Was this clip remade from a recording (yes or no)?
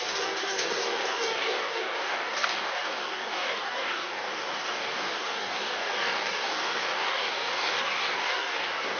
yes